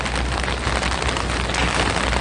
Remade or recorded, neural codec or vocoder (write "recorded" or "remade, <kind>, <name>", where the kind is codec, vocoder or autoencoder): recorded